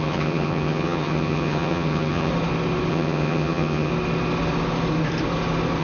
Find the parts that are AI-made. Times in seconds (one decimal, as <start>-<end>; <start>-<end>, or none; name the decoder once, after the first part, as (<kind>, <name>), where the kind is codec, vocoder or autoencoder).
0.0-2.3 (vocoder, HiFi-GAN); 2.9-3.9

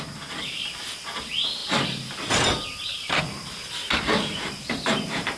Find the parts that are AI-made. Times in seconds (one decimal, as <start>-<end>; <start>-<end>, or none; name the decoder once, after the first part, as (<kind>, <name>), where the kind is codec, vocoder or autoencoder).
1.6-3.2 (vocoder, BigVGAN v2); 3.8-5.4

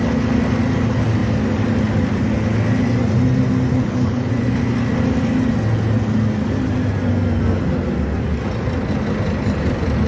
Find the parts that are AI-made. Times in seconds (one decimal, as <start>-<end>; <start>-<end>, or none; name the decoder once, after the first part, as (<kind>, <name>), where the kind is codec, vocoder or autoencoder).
3.7-4.3 (codec, HILCodec)

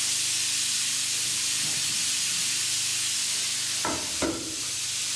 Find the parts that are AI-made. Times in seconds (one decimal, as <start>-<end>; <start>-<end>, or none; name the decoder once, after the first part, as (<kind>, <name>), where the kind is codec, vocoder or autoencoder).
none

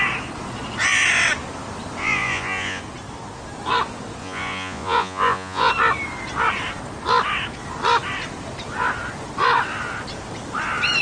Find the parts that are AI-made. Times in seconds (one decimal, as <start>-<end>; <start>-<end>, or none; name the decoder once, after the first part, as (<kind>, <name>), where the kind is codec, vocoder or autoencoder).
2.0-2.8 (vocoder, Vocos); 4.2-5.7

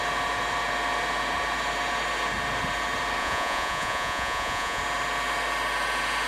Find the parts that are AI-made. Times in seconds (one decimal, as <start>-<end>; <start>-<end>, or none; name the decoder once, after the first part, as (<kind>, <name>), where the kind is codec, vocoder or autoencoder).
3.2-4.8 (vocoder, Vocos)

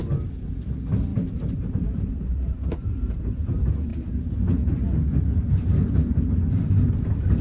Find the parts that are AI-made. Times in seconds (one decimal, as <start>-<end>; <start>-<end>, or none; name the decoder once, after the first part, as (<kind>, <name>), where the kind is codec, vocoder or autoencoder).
1.1-3.1 (vocoder, BigVGAN v2)